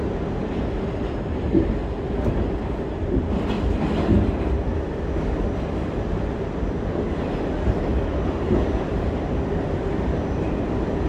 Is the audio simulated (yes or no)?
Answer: no